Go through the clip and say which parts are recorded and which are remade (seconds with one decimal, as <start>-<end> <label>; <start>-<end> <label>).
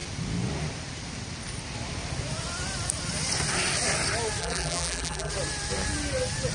0.0-4.4 recorded; 4.4-5.3 remade; 5.3-6.5 recorded